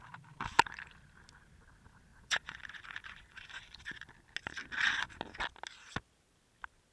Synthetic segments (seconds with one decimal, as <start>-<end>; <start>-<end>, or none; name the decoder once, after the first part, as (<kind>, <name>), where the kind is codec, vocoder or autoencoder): 2.1-4.1 (vocoder, Vocos)